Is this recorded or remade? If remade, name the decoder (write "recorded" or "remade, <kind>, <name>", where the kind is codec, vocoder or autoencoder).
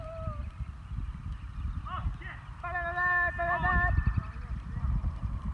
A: recorded